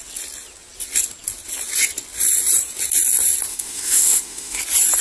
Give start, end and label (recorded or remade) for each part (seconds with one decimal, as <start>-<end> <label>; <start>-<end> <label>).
0.0-3.5 recorded; 3.5-4.6 remade; 4.6-5.0 recorded